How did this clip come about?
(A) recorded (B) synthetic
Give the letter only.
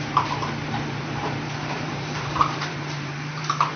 B